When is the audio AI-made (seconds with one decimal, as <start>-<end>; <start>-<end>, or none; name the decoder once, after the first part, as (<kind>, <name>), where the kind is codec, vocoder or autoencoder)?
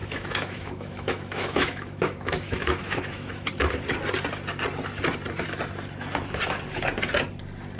0.0-3.5 (autoencoder, DAC-VAE)